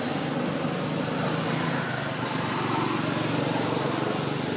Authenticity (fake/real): real